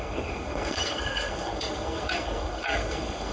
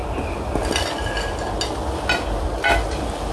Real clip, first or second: second